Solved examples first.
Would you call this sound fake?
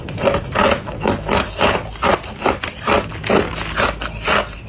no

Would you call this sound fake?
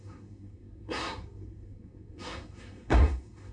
yes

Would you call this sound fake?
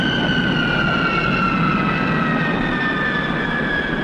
no